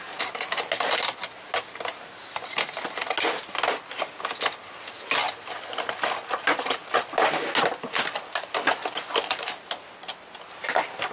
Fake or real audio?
real